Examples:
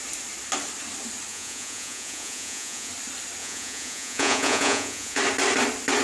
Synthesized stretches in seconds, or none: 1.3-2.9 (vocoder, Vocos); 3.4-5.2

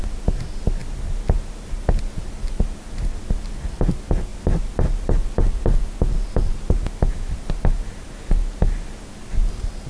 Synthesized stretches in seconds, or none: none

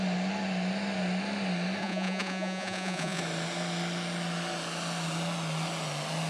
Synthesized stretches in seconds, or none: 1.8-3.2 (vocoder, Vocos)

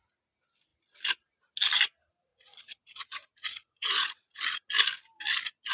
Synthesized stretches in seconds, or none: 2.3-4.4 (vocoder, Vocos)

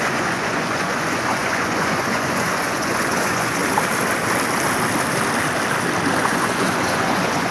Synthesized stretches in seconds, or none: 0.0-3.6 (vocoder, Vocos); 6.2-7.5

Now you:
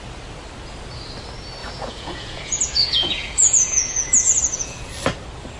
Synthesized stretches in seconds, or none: 1.6-4.9 (vocoder, Vocos)

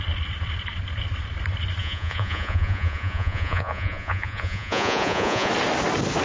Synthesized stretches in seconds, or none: 1.8-5.5 (vocoder, Vocos)